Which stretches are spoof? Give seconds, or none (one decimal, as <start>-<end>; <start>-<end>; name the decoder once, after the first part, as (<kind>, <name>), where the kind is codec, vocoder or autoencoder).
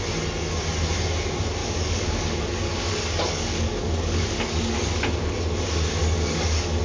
1.6-5.4 (codec, DAC); 6.0-6.8